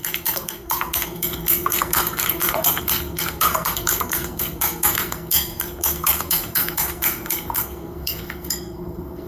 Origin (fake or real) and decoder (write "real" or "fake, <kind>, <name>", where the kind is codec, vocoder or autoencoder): fake, codec, SNAC